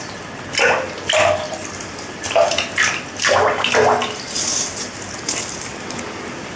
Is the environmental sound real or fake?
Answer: real